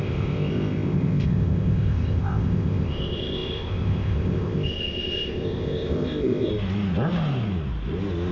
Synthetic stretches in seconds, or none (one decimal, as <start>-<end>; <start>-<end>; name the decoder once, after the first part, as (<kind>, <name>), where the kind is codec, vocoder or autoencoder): 0.0-6.5 (codec, ZipCodec)